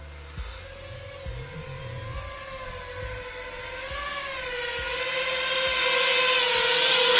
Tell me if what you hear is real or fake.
real